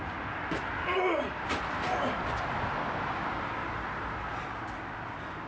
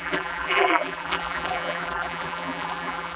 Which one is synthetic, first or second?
second